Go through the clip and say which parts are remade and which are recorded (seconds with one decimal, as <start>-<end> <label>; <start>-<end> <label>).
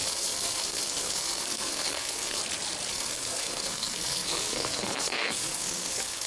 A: 0.0-2.4 remade; 2.4-2.9 recorded; 2.9-6.3 remade